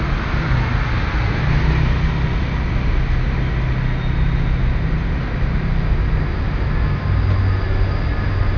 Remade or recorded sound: recorded